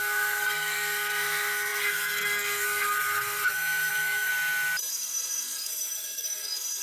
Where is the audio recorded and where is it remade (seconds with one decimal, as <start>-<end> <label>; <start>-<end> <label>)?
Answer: 0.0-4.3 remade; 4.3-4.9 recorded; 4.9-6.8 remade